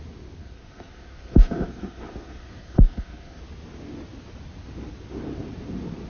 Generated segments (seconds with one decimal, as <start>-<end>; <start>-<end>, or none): 0.4-3.4